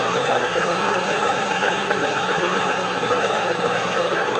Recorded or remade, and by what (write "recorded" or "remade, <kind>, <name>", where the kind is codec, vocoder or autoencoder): remade, codec, SNAC